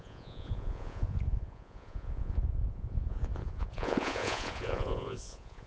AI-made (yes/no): yes